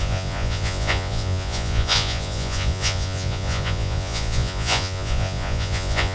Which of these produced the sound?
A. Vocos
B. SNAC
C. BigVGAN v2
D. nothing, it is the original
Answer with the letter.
A